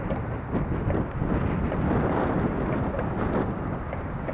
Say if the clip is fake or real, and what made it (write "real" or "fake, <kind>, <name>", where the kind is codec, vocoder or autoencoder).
real